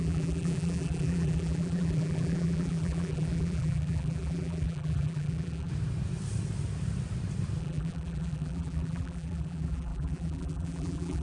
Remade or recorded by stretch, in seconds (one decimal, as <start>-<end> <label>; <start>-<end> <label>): 0.0-5.7 remade; 5.7-7.6 recorded; 7.6-11.2 remade